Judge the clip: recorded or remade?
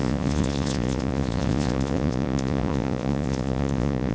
remade